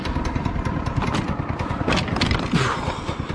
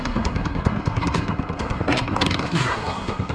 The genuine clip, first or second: first